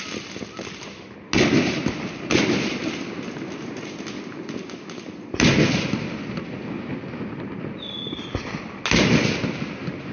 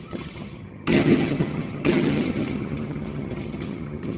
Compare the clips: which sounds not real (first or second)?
second